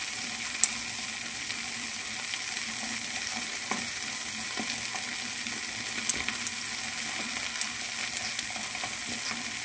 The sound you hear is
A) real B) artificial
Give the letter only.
A